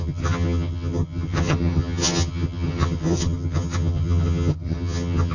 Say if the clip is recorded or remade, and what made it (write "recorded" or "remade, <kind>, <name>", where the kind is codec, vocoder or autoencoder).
remade, vocoder, HiFi-GAN